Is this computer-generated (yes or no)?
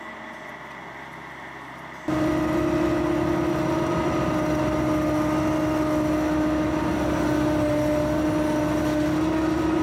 no